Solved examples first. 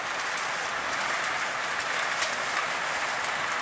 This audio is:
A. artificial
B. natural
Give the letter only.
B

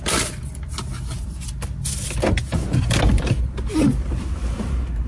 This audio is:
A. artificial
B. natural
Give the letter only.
B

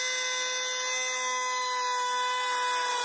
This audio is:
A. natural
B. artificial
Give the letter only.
A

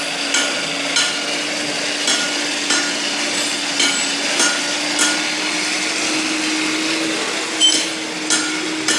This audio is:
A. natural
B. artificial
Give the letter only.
A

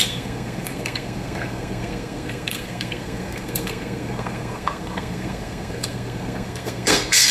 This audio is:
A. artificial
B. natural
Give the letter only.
A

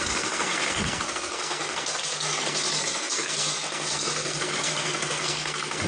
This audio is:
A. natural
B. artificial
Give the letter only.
B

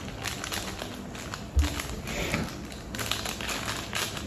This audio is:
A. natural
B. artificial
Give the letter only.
A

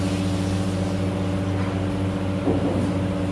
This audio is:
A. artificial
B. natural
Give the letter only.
B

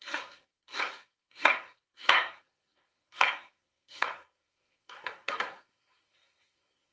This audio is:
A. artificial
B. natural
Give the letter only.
A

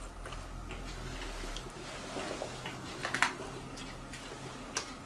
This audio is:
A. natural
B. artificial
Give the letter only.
A